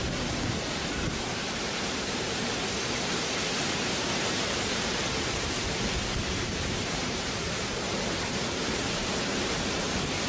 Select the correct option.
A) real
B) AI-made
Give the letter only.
B